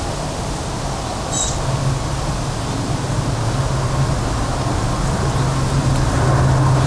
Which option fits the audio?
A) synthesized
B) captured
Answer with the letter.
B